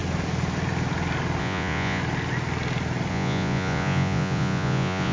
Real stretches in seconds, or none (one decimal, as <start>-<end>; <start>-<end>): 0.0-1.4; 2.0-3.1